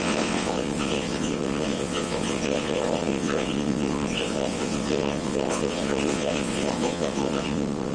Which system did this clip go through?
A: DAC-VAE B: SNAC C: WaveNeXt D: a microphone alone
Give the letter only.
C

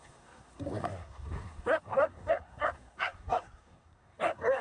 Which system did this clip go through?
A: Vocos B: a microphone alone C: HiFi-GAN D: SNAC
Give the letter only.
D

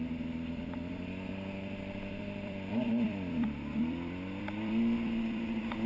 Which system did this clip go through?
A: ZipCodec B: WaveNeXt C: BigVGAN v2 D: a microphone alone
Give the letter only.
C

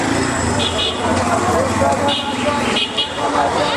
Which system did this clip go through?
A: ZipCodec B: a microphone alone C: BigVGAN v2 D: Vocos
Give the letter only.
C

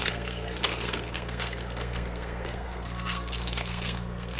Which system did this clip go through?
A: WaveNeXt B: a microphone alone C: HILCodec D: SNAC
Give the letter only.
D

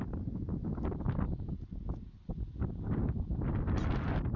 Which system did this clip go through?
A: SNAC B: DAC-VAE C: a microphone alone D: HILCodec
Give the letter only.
C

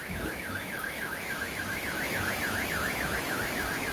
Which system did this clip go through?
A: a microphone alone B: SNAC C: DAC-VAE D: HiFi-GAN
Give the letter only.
C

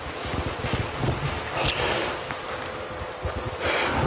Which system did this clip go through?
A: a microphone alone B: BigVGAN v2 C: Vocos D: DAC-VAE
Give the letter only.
A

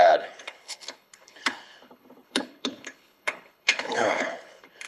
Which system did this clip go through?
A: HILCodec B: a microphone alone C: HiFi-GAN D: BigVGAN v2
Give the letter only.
A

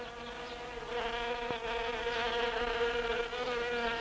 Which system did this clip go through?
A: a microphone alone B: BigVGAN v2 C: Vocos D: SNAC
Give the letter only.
A